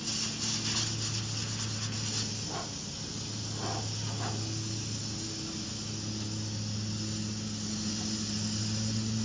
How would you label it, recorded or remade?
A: recorded